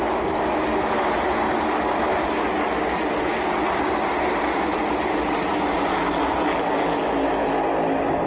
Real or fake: real